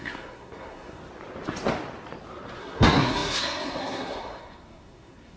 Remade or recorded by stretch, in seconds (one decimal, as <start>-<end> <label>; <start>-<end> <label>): 0.0-1.0 remade; 1.0-2.6 recorded; 2.6-5.4 remade